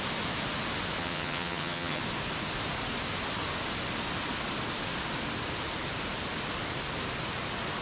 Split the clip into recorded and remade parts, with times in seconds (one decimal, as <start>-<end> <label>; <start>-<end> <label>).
0.0-1.0 recorded; 1.0-2.0 remade; 2.0-7.8 recorded